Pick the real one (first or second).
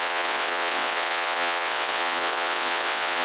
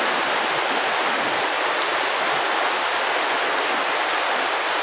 second